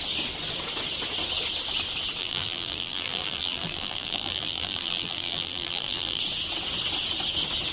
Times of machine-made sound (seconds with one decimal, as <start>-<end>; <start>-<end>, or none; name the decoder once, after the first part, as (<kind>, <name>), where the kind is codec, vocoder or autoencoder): 2.2-6.2 (vocoder, BigVGAN v2)